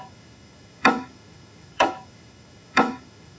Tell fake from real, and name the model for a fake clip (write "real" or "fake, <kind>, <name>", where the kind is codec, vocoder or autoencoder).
fake, autoencoder, DAC-VAE